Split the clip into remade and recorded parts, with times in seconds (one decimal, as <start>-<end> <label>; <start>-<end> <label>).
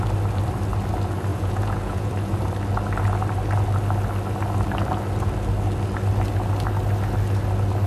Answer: 0.0-1.3 recorded; 1.3-2.1 remade; 2.1-7.9 recorded